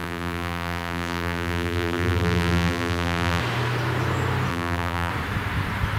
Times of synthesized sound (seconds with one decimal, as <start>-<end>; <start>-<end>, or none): 0.0-3.4; 4.5-5.1